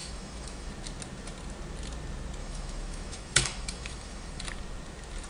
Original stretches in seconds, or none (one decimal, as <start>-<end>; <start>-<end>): 0.7-2.4; 4.4-5.3